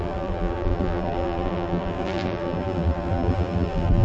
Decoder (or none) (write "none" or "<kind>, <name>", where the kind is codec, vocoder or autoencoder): vocoder, BigVGAN v2